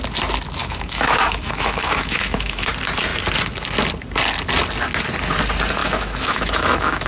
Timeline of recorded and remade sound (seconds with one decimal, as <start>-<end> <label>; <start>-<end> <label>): 0.0-0.6 recorded; 0.6-2.7 remade; 2.7-5.8 recorded; 5.8-7.1 remade